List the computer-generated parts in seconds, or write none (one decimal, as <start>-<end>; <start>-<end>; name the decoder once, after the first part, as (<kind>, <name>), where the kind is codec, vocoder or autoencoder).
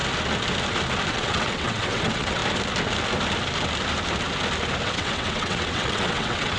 1.1-2.4 (vocoder, WaveNeXt); 4.8-6.6